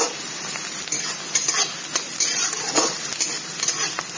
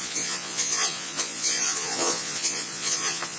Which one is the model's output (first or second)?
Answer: second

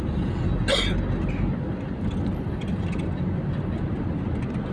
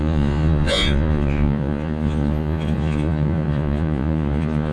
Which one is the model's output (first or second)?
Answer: second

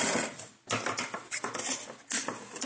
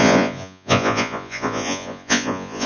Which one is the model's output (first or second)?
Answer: second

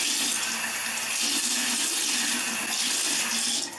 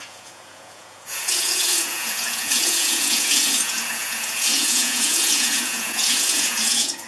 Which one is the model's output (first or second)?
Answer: second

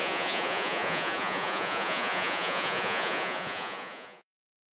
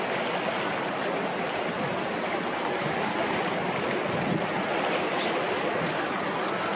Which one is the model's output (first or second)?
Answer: first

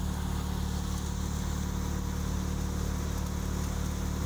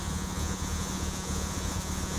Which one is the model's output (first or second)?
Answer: second